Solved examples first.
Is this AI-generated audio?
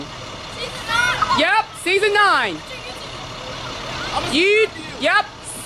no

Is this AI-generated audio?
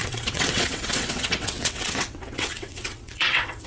yes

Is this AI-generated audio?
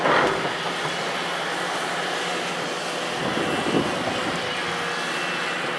no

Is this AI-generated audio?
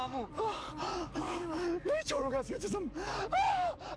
yes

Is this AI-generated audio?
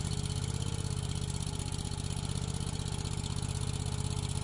no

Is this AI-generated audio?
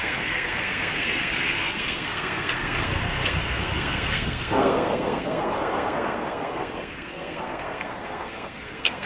yes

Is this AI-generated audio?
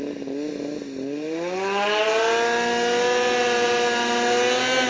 no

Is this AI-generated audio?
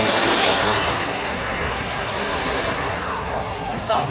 yes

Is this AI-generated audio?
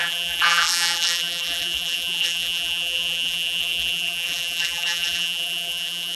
yes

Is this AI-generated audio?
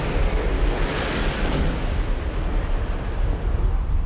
no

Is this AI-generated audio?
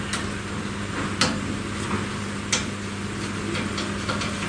no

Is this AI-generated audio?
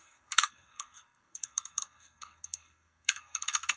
yes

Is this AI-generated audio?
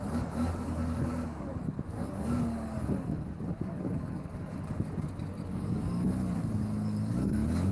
yes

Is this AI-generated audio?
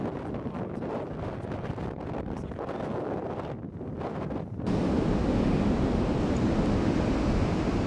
no